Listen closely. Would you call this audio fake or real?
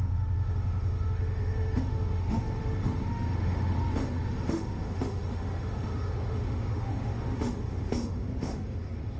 fake